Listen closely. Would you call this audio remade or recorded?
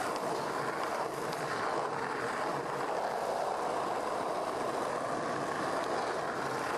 recorded